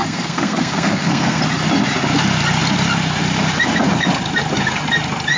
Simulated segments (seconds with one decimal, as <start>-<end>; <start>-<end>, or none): 0.0-1.4